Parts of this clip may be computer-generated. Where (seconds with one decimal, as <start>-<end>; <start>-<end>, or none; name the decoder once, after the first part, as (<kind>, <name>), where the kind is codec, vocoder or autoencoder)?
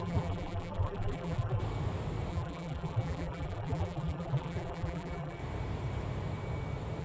0.0-1.6 (vocoder, BigVGAN v2); 2.3-5.4